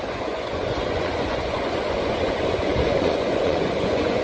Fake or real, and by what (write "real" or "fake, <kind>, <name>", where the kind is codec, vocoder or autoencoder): fake, vocoder, Vocos